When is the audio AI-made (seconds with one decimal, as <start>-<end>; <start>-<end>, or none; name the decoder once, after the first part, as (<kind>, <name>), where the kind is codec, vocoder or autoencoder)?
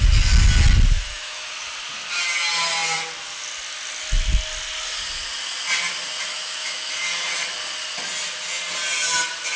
0.9-1.5 (autoencoder, DAC-VAE); 6.3-6.9